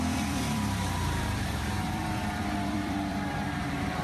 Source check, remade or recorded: remade